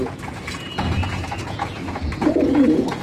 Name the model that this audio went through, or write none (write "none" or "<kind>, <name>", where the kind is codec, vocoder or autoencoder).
vocoder, Vocos